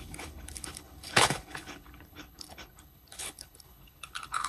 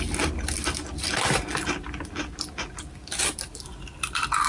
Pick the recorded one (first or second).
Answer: second